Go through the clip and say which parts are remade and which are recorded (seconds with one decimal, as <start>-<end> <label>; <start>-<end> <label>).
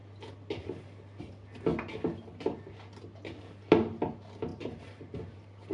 0.0-4.5 recorded; 4.5-5.1 remade; 5.1-5.7 recorded